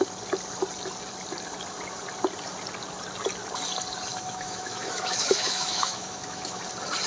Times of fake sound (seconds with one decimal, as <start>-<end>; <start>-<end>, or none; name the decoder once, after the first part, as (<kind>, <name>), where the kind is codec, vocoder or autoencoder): 4.1-6.6 (autoencoder, DAC-VAE)